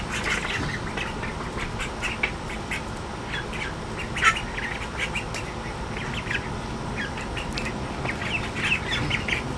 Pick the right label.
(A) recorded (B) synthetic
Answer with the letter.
A